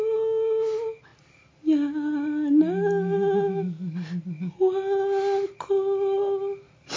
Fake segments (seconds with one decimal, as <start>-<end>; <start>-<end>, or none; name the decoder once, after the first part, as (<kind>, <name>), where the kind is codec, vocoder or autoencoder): none